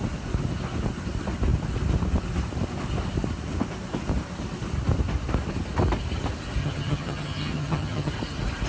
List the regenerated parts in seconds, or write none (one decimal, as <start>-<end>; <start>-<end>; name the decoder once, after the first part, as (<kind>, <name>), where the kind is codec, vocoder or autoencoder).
6.6-8.1 (vocoder, HiFi-GAN)